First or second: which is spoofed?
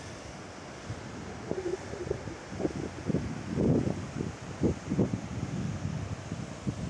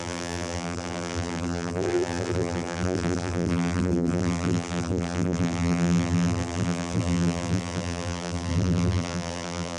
second